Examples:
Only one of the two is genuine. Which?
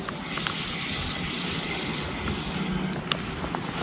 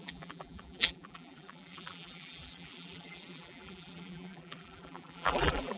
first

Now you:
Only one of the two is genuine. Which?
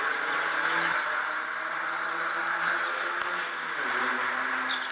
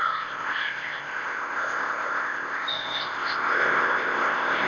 first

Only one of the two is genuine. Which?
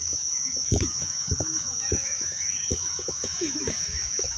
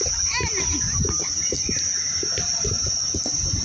second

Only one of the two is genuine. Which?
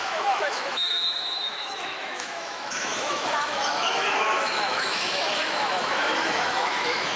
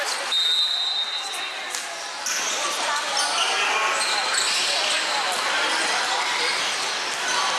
second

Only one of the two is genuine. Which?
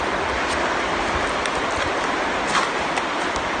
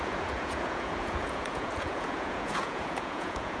first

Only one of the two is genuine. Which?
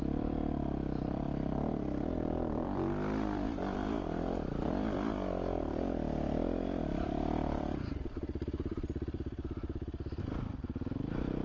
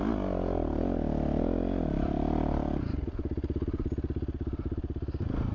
second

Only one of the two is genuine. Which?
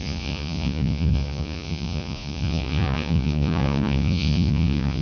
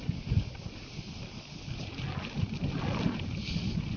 second